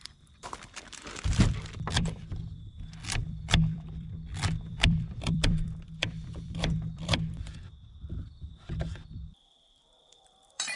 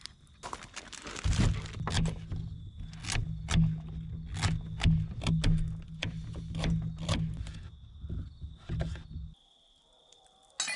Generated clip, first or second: first